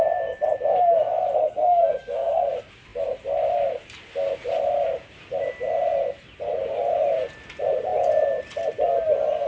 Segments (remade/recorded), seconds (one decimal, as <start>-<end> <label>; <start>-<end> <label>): 0.0-1.4 recorded; 1.4-2.5 remade; 2.5-9.5 recorded